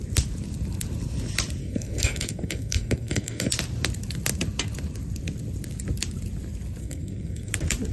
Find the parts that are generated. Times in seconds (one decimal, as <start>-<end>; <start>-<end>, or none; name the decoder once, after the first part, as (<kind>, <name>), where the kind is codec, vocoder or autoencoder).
1.6-3.5 (codec, SNAC); 6.8-7.5